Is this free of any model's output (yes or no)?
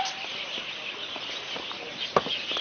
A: yes